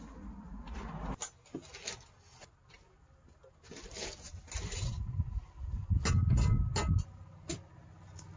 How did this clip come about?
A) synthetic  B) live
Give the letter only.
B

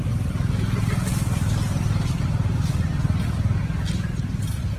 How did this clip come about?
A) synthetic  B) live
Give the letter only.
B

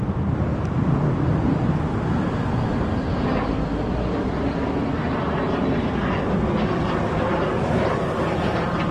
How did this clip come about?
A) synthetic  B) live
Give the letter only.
B